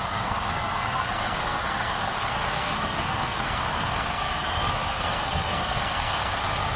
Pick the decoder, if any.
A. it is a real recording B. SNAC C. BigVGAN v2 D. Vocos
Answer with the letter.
B